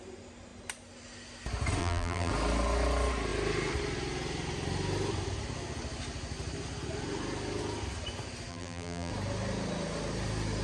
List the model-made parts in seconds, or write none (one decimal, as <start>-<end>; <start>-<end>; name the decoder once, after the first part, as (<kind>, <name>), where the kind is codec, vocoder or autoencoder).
1.8-2.3 (vocoder, BigVGAN v2); 8.5-9.1

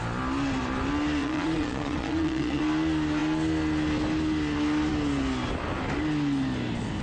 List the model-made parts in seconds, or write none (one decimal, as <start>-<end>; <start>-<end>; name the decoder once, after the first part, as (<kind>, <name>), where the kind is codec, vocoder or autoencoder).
1.2-2.6 (vocoder, Vocos)